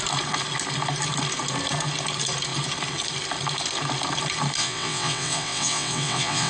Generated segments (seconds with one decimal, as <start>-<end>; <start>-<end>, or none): 4.6-6.5

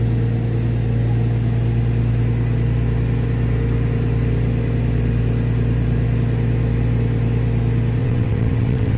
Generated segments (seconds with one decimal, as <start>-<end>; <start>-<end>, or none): 8.0-9.0